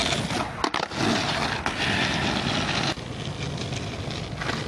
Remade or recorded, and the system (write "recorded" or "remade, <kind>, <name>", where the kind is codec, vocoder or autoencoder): recorded